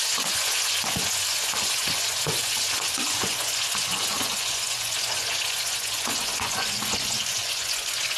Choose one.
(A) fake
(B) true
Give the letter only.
A